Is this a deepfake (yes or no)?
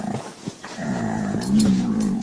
yes